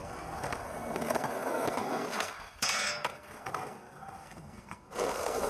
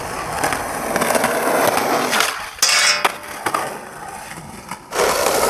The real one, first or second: second